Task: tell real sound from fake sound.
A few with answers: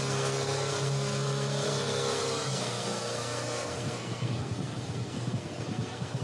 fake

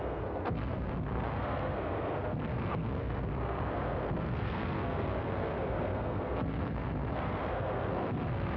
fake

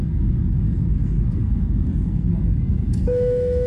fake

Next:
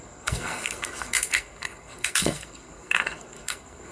fake